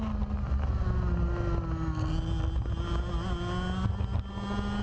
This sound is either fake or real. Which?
real